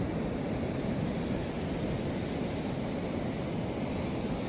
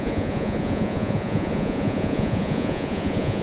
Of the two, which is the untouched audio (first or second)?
first